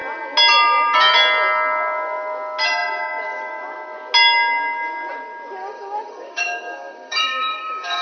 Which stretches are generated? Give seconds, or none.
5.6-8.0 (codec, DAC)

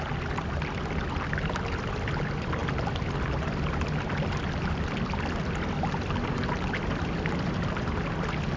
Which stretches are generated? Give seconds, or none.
none

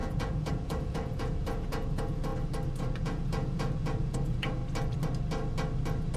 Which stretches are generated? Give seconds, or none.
0.0-2.3 (vocoder, Vocos); 2.8-4.6

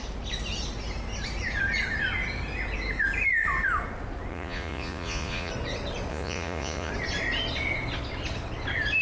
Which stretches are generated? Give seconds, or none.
4.3-5.5 (vocoder, Vocos); 6.1-6.9